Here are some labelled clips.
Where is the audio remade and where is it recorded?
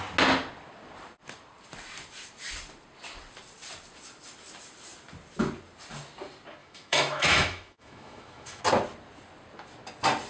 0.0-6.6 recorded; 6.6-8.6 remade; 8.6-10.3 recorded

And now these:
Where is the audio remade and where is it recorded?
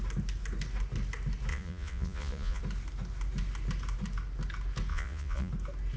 0.0-1.5 recorded; 1.5-2.6 remade; 2.6-4.9 recorded; 4.9-5.5 remade; 5.5-6.0 recorded